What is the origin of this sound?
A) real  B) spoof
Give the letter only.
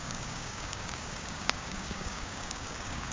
B